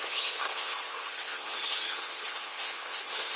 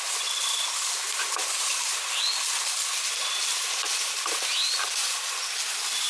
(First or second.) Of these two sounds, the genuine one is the second